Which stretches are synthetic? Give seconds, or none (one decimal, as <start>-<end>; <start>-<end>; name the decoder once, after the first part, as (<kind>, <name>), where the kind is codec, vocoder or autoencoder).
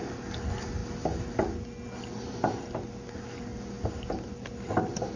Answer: none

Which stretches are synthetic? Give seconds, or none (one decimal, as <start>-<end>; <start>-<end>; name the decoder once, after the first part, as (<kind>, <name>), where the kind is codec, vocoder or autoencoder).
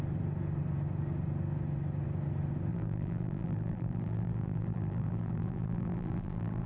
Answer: 2.7-6.7 (vocoder, BigVGAN v2)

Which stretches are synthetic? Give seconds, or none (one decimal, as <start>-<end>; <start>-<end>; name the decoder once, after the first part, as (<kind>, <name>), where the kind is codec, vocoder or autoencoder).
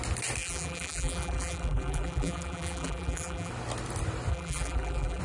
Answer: 0.4-3.5 (vocoder, BigVGAN v2); 4.3-5.2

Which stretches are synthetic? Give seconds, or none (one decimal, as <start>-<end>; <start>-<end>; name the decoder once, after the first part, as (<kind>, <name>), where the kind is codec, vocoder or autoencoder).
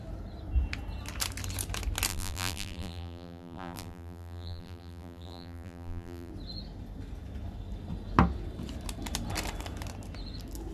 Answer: 2.1-6.3 (vocoder, BigVGAN v2)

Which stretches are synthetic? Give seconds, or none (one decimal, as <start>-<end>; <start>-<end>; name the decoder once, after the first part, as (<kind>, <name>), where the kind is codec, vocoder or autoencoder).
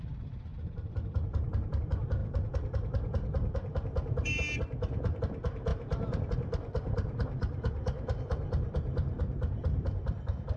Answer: 0.0-10.6 (vocoder, BigVGAN v2)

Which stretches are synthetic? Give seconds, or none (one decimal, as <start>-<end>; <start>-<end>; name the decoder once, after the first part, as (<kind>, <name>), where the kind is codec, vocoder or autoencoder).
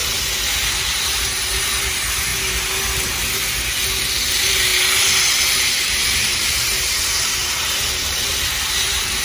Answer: 0.7-2.3 (vocoder, BigVGAN v2); 4.3-4.7; 5.4-9.2